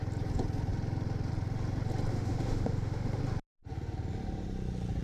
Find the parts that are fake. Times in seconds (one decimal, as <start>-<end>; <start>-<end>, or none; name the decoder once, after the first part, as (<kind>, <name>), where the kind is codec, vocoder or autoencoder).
2.1-3.2 (autoencoder, DAC-VAE)